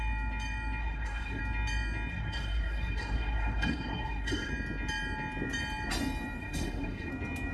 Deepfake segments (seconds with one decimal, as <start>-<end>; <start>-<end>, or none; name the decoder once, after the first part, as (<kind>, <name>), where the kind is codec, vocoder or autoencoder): 0.8-1.4 (codec, SNAC); 2.1-4.5; 6.4-7.1